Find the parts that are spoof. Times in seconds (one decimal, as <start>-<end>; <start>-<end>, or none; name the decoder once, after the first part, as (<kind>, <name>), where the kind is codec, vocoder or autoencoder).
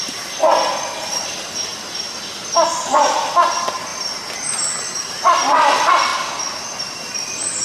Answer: 0.0-1.7 (vocoder, BigVGAN v2); 2.7-3.9; 5.0-6.1; 6.8-7.6